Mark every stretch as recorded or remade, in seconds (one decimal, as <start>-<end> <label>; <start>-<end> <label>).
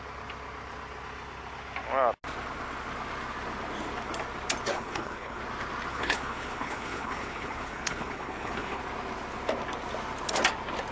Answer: 0.0-4.7 recorded; 4.7-5.4 remade; 5.4-5.9 recorded; 5.9-8.8 remade; 8.8-10.9 recorded